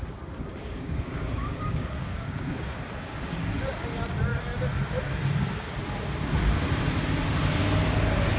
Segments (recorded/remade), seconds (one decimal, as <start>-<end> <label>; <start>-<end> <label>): 0.0-0.6 recorded; 0.6-2.8 remade; 2.8-8.4 recorded